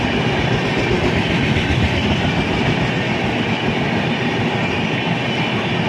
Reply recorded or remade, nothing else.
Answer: recorded